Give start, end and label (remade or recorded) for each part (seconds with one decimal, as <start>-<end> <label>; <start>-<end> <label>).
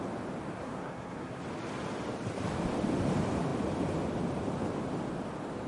0.0-0.6 recorded; 0.6-1.4 remade; 1.4-5.7 recorded